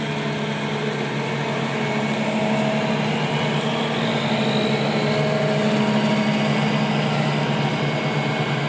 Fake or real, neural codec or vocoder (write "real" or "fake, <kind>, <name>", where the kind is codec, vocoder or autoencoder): real